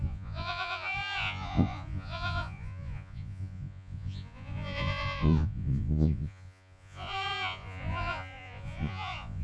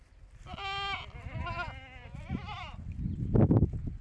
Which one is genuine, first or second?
second